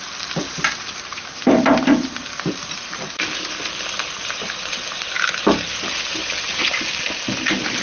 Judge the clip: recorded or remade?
recorded